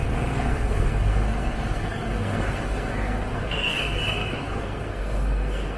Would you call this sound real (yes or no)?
no